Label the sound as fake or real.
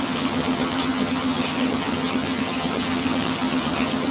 fake